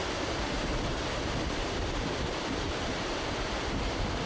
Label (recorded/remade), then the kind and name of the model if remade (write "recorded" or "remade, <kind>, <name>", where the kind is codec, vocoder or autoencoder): recorded